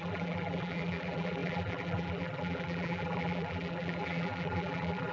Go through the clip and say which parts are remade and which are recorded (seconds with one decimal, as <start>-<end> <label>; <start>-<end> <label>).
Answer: 0.0-5.1 remade